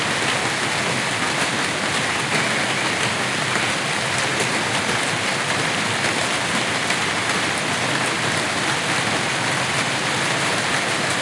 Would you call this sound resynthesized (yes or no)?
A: no